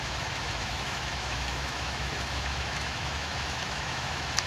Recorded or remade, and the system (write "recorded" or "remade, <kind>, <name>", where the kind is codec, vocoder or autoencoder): remade, autoencoder, DAC-VAE